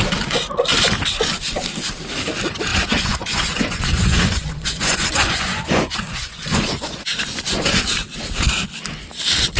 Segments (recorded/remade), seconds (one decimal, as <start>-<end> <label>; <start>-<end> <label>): 0.0-2.7 recorded; 2.7-7.9 remade; 7.9-9.6 recorded